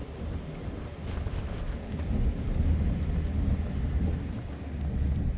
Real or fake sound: real